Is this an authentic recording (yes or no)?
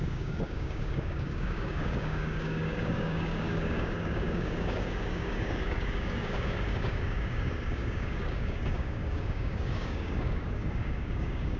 no